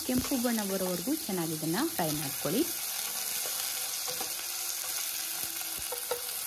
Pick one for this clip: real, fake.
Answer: real